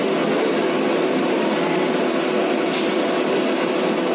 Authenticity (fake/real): real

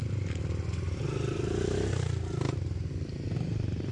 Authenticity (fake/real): real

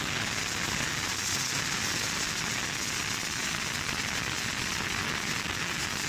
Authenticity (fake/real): real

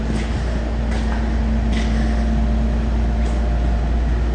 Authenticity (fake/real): real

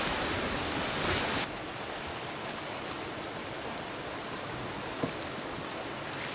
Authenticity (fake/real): real